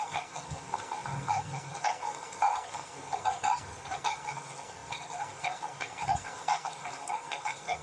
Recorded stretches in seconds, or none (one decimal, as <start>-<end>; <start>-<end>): none